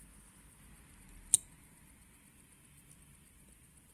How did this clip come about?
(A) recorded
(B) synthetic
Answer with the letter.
A